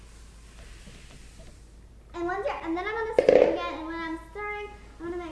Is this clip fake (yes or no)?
no